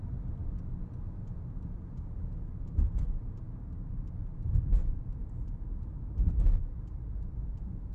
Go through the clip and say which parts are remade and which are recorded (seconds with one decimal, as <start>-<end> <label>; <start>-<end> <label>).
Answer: 0.0-0.4 remade; 0.4-1.0 recorded; 1.0-7.9 remade